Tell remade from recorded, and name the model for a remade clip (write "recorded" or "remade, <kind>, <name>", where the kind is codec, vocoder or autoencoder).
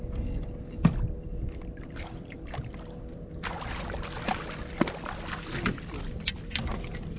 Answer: recorded